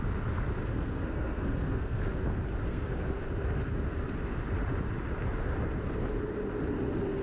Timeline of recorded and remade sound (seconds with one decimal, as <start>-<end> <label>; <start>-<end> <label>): 0.0-0.6 recorded; 0.6-2.0 remade; 2.0-2.6 recorded; 2.6-3.2 remade; 3.2-7.2 recorded

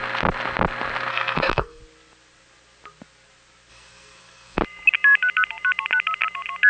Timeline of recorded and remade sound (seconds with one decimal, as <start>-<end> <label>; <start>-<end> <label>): 0.0-1.1 recorded; 1.1-1.8 remade; 1.8-3.7 recorded; 3.7-4.6 remade; 4.6-6.7 recorded

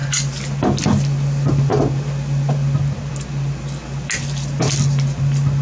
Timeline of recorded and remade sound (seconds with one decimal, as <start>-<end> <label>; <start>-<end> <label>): 0.0-5.6 recorded

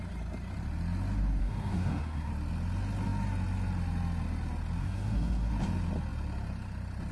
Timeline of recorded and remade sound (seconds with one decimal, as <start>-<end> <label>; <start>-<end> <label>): 0.0-1.4 recorded; 1.4-2.3 remade; 2.3-4.8 recorded; 4.8-5.5 remade; 5.5-7.1 recorded

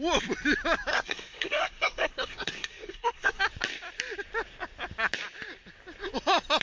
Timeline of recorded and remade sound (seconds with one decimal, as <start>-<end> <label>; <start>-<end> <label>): 0.0-0.9 recorded; 0.9-3.4 remade; 3.4-6.6 recorded

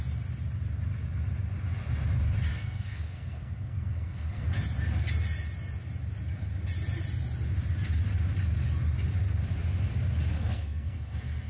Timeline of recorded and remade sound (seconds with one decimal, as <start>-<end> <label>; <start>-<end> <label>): 0.0-2.5 recorded; 2.5-4.5 remade; 4.5-10.3 recorded; 10.3-11.5 remade

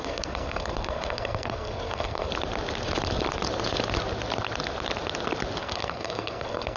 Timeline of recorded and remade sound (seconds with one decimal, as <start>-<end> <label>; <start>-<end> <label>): 0.0-2.3 remade; 2.3-5.6 recorded; 5.6-6.8 remade